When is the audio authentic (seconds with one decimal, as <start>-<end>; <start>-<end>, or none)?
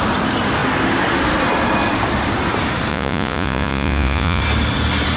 0.0-2.9; 4.4-5.2